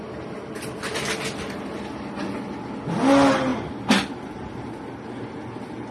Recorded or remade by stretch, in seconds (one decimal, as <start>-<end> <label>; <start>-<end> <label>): 0.0-5.9 recorded